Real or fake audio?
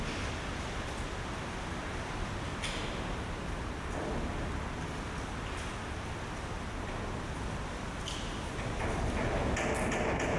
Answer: real